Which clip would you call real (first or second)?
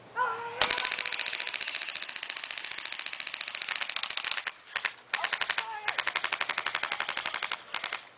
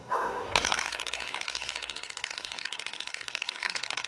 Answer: first